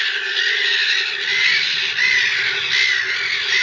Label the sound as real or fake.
real